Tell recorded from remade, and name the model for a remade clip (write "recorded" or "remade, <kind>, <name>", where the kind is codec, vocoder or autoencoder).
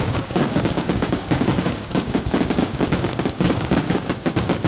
remade, codec, DAC